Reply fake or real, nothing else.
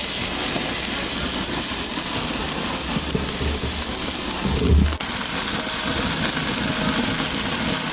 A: real